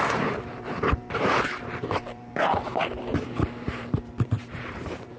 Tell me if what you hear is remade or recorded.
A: remade